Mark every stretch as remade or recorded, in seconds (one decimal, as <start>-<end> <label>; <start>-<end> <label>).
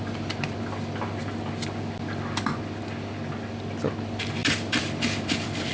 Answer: 0.0-4.4 recorded; 4.4-5.7 remade